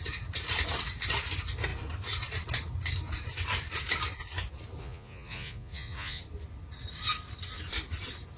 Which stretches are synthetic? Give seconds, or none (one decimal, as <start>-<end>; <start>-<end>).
4.8-6.2